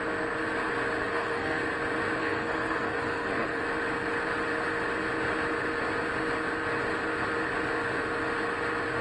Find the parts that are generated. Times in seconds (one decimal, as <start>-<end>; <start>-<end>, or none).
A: 1.0-1.6; 2.2-3.6